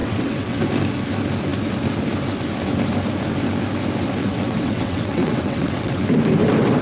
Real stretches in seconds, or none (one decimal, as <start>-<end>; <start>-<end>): 0.6-4.2; 6.0-6.8